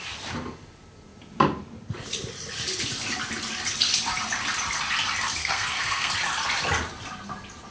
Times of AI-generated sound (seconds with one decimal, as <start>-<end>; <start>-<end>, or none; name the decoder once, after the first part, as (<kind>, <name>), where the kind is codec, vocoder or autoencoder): 5.4-6.1 (codec, SNAC)